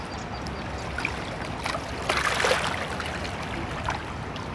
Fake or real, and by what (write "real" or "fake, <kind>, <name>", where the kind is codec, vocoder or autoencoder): real